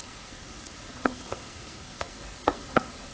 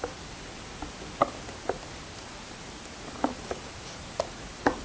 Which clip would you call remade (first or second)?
first